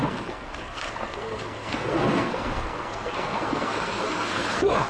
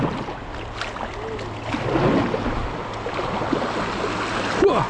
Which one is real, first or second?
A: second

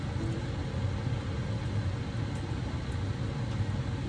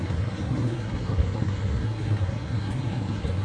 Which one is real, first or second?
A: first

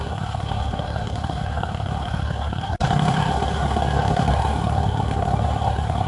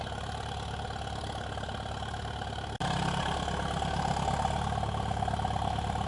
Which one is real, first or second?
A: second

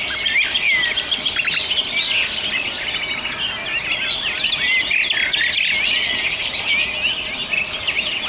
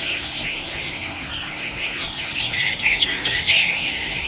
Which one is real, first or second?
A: first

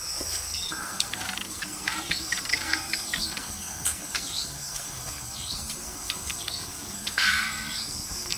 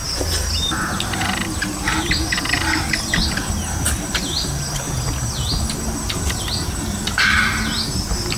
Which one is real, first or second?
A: second